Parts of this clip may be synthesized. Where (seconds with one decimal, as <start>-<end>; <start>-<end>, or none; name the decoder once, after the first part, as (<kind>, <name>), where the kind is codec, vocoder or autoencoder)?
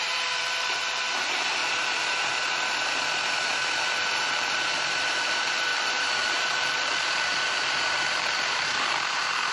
0.0-1.6 (vocoder, BigVGAN v2); 4.1-9.5